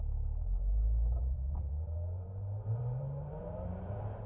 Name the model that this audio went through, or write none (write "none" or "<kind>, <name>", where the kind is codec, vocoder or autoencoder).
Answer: vocoder, BigVGAN v2